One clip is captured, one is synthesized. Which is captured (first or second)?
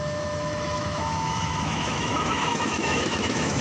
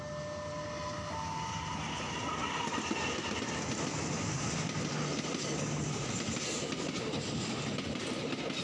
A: second